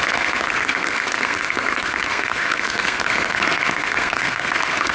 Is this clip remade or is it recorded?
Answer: remade